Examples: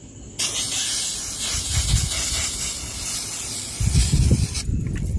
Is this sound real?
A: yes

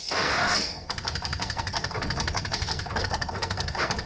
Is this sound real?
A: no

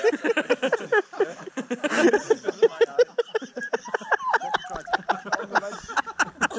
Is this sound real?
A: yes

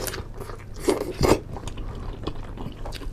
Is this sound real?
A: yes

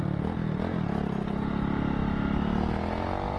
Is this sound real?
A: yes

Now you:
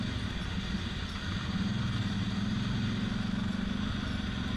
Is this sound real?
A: yes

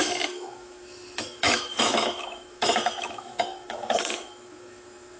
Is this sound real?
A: no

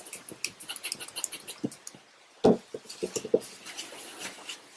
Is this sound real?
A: yes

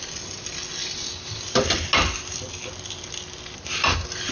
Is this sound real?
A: yes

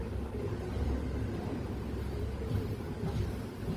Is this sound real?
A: yes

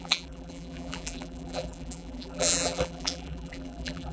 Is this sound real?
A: no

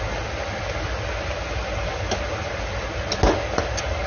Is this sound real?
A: yes